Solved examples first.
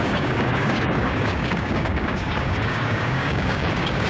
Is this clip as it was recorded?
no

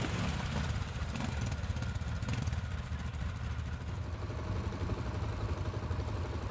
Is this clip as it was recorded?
yes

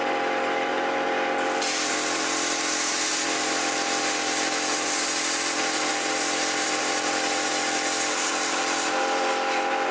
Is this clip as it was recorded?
no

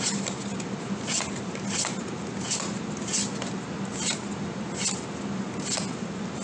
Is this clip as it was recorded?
yes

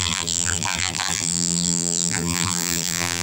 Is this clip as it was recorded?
no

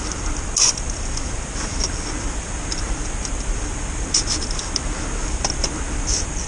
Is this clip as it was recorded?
yes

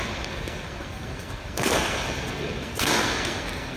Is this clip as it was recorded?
no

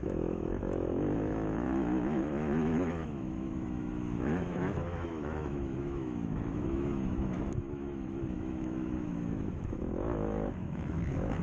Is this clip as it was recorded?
no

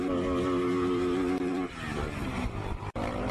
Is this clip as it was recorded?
yes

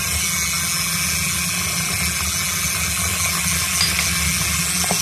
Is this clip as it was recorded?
yes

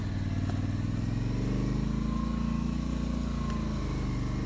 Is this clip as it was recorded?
yes